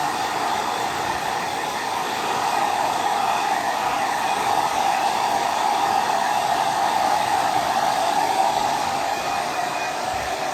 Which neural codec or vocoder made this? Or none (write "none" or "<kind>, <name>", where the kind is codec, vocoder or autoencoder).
codec, DAC